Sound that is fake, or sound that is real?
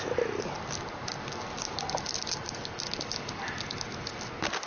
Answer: real